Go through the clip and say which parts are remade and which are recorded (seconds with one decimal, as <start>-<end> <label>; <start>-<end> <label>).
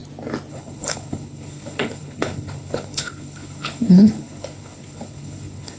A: 0.0-0.5 recorded; 0.5-5.8 remade